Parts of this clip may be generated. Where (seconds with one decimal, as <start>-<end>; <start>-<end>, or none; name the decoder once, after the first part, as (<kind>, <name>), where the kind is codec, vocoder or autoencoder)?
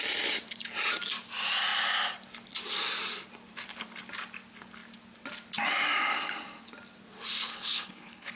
7.5-8.4 (codec, HILCodec)